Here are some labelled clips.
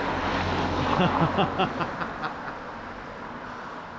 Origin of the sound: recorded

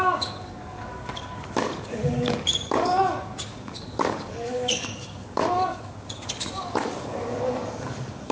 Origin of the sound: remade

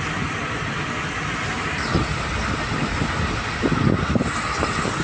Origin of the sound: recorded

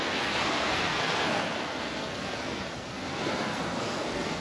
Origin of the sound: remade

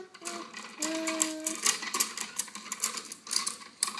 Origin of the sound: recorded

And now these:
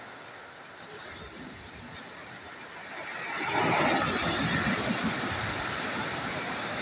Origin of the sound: recorded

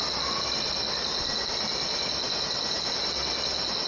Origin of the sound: recorded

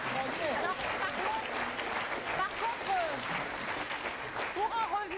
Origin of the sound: recorded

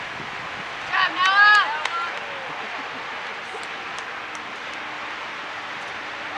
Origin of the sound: recorded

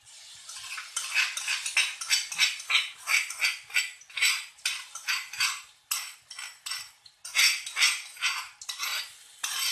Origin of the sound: recorded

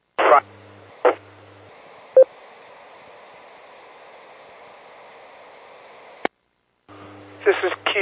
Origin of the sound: recorded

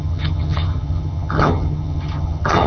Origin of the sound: remade